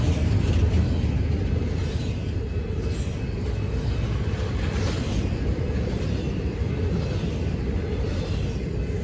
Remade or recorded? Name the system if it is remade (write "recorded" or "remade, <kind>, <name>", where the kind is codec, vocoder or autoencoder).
recorded